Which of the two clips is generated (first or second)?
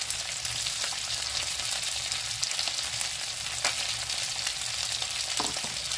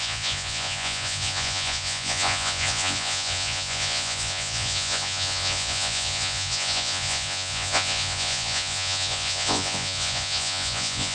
second